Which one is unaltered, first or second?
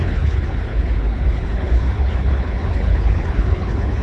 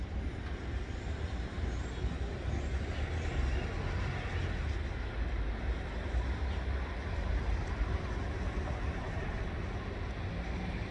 second